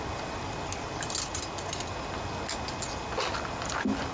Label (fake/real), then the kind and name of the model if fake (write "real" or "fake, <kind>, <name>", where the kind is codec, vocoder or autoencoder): real